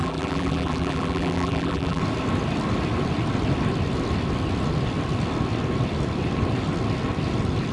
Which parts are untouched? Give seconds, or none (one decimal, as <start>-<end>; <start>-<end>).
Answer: 2.0-7.7